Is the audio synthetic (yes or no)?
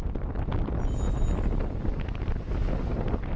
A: no